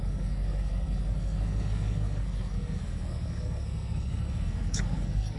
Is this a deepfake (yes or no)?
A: yes